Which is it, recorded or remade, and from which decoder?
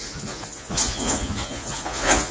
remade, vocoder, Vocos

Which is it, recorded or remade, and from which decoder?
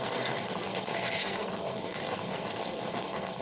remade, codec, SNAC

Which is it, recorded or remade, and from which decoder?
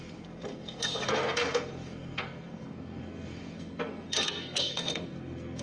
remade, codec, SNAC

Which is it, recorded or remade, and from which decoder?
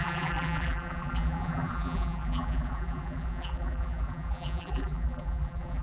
remade, vocoder, BigVGAN v2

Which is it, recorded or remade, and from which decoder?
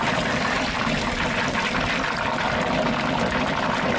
recorded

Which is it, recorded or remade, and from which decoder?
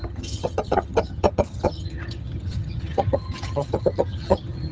remade, vocoder, HiFi-GAN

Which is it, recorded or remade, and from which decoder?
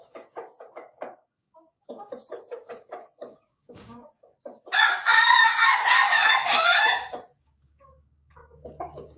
remade, codec, DAC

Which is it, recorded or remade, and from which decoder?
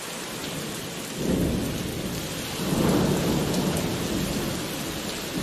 recorded